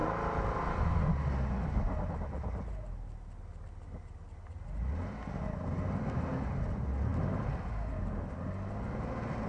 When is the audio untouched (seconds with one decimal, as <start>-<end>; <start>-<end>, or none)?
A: 0.0-9.5